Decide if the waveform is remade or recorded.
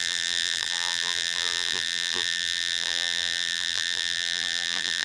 remade